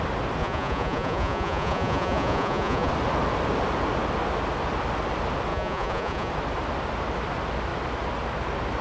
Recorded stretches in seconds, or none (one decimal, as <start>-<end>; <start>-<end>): 0.0-0.4; 2.9-5.5; 6.3-8.8